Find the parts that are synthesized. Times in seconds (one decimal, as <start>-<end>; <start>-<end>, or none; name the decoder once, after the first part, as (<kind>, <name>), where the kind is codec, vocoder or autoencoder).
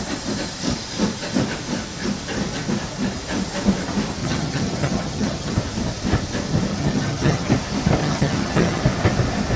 4.2-5.5 (vocoder, HiFi-GAN); 6.7-7.5; 8.0-8.8